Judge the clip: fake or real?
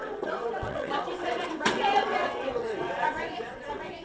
fake